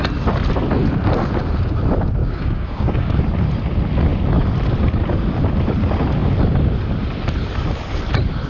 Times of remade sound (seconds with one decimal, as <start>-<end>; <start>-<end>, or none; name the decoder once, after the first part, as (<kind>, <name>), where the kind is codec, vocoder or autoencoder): 2.2-3.2 (codec, DAC)